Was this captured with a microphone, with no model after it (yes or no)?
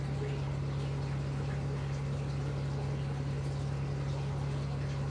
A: yes